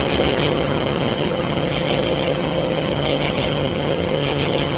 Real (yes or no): no